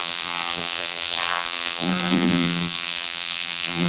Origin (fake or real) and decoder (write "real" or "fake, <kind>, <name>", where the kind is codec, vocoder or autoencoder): fake, vocoder, BigVGAN v2